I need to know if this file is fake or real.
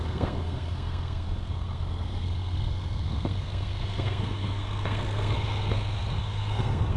fake